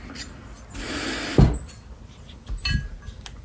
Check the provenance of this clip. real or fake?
real